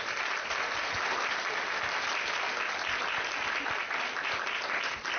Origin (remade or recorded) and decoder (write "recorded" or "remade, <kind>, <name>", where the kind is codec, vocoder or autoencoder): recorded